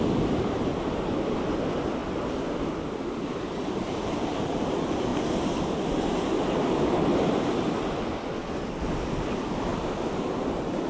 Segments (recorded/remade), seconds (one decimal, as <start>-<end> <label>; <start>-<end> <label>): 0.0-10.9 recorded